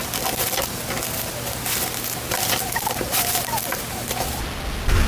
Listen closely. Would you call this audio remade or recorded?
recorded